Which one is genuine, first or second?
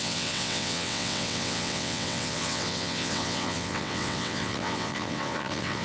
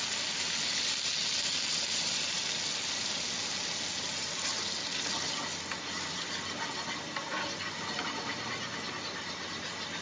second